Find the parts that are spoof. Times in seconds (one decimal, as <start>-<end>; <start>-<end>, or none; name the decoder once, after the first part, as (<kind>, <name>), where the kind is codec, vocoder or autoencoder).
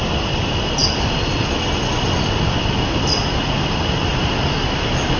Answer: none